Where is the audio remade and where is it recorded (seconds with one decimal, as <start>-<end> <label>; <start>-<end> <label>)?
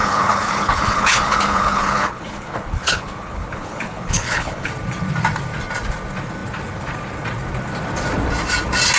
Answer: 0.0-4.7 remade; 4.7-9.0 recorded